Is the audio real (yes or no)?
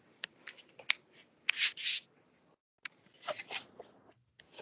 yes